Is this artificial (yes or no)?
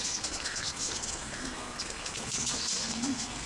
yes